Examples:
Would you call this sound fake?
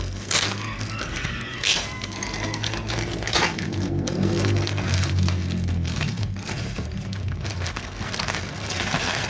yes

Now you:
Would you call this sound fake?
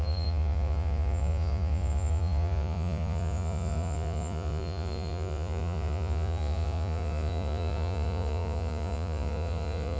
yes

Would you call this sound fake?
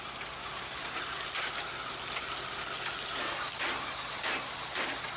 no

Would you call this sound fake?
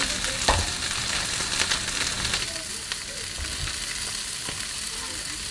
no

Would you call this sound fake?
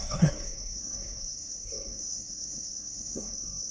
yes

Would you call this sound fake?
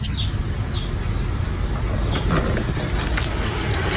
no